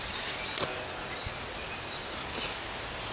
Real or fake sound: real